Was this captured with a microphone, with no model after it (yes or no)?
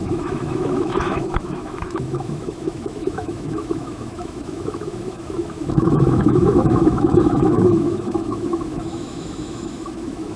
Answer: no